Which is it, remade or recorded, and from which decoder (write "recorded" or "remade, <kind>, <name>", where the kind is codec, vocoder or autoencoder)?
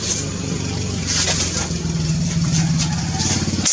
recorded